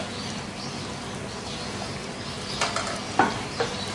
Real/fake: real